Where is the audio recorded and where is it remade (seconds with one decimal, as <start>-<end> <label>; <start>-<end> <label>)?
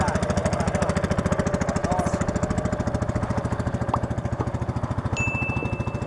0.0-6.1 recorded